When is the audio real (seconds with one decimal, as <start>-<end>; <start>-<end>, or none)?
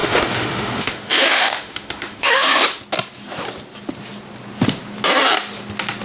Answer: 2.8-6.0